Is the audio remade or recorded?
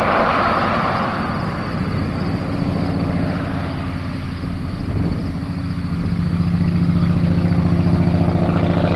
recorded